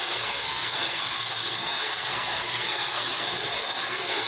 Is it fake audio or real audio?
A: fake